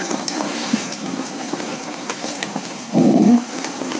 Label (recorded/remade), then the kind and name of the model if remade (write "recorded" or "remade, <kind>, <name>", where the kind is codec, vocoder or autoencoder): remade, codec, SNAC